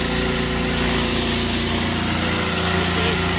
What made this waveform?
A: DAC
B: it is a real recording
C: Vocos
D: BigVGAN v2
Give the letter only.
B